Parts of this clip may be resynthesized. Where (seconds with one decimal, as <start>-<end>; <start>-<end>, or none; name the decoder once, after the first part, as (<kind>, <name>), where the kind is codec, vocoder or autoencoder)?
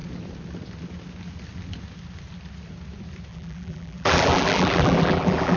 3.3-5.6 (vocoder, BigVGAN v2)